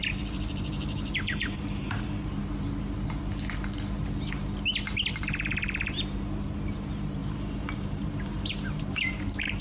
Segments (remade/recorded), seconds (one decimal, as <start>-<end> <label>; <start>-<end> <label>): 0.0-2.4 remade; 2.4-5.1 recorded; 5.1-9.6 remade